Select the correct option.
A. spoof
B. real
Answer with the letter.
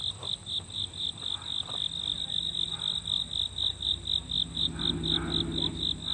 B